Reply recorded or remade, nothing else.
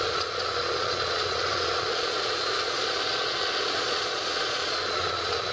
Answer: remade